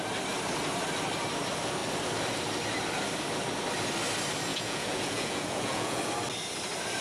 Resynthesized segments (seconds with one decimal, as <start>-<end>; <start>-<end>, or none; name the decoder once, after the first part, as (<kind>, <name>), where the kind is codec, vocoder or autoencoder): 4.5-6.0 (vocoder, Vocos)